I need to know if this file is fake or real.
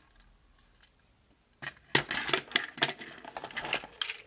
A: real